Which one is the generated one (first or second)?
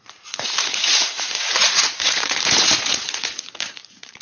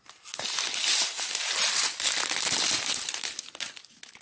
first